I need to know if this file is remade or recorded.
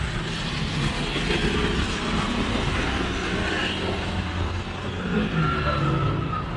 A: recorded